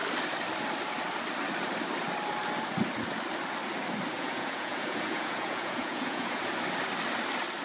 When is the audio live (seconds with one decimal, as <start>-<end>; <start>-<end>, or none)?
0.0-4.1; 6.5-7.6